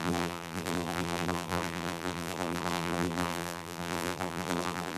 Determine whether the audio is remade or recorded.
remade